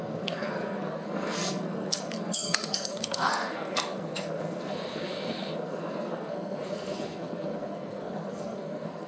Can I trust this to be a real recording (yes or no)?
no